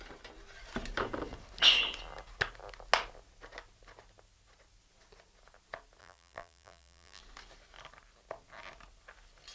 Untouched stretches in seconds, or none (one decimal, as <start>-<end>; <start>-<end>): 0.0-6.0; 7.2-9.5